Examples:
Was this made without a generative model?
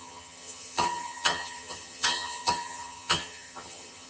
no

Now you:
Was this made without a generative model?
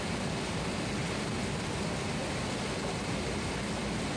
yes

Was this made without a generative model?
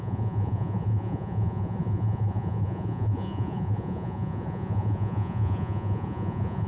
no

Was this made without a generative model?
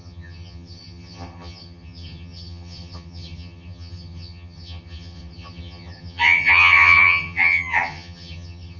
no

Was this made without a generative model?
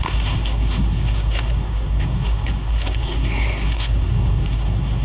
no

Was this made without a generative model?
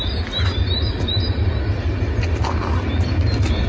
yes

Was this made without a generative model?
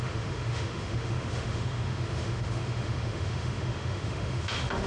no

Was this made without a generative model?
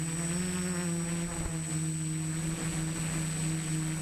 yes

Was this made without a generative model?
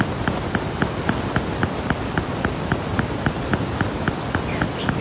yes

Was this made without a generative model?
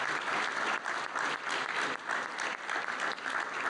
yes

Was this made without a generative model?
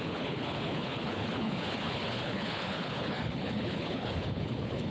no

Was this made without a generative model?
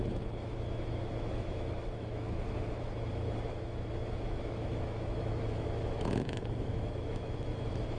no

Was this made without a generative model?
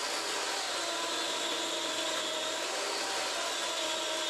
yes